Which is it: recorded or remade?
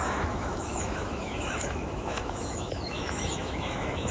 remade